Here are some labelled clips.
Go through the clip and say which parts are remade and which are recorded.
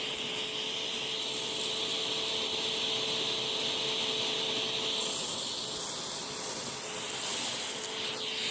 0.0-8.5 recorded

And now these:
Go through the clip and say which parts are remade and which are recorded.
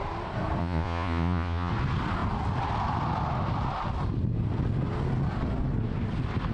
0.0-0.6 recorded; 0.6-1.7 remade; 1.7-6.5 recorded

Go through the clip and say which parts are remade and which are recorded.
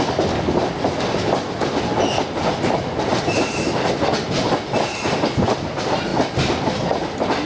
0.0-7.5 recorded